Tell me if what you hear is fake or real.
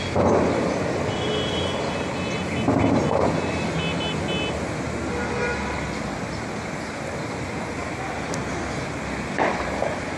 real